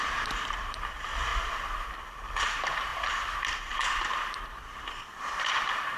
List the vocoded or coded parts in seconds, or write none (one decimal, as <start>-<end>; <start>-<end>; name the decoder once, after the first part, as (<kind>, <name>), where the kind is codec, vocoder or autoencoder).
0.0-1.3 (vocoder, BigVGAN v2); 2.1-2.9; 3.5-6.0